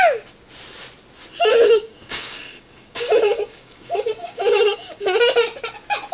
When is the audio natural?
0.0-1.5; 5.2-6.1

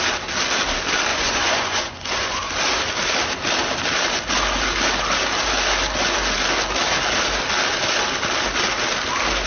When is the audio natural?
0.0-1.1; 2.5-9.5

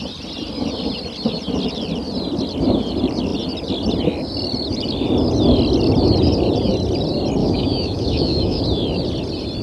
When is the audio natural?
0.0-7.4; 8.6-9.6

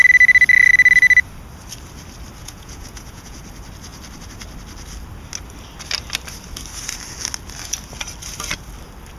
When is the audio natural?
0.0-2.4; 3.4-9.2

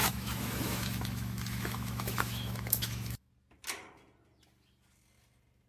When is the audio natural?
3.3-5.7

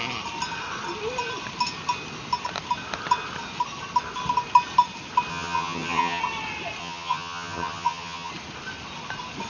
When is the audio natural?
0.0-5.3; 6.2-6.8; 8.3-9.5

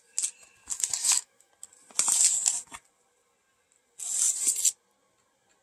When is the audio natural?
0.0-1.0; 1.5-5.6